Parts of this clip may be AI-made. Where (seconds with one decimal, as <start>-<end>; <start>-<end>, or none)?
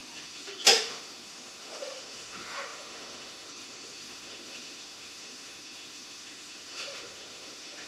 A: 0.0-7.9